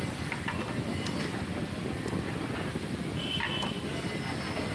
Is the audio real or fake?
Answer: real